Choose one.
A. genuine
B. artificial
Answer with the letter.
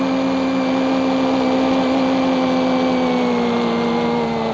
A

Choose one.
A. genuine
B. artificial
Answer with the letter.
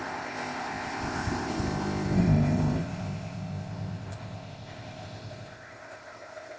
B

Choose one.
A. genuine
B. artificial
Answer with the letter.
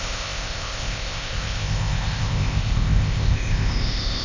B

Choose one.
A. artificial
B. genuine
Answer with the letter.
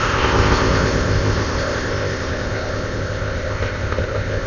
A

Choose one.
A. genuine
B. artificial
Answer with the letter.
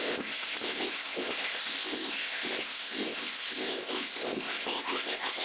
B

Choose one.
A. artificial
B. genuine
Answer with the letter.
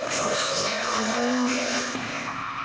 A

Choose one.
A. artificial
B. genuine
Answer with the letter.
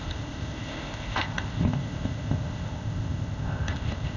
A